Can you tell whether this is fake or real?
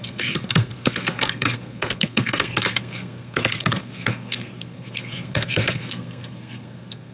fake